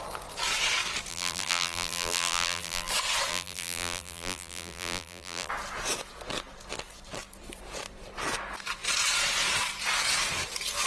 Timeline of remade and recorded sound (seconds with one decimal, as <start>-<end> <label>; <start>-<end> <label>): 0.0-1.1 recorded; 1.1-2.9 remade; 2.9-3.3 recorded; 3.3-5.5 remade; 5.5-10.9 recorded

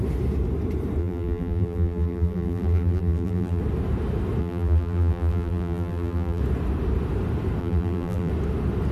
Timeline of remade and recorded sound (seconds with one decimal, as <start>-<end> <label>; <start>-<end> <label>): 0.0-1.0 recorded; 1.0-3.6 remade; 3.6-4.4 recorded; 4.4-6.4 remade; 6.4-7.6 recorded; 7.6-8.3 remade; 8.3-8.9 recorded